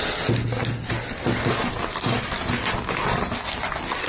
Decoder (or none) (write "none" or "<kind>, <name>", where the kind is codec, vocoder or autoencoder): none